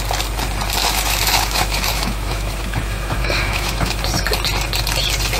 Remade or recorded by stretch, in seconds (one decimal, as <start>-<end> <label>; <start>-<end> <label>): 0.0-0.8 recorded; 0.8-4.0 remade; 4.0-5.4 recorded